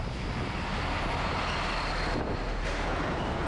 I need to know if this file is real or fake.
real